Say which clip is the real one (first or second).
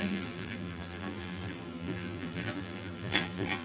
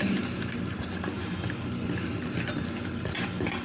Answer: second